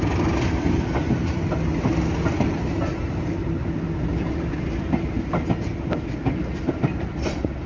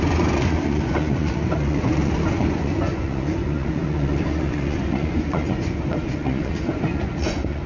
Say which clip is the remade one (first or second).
second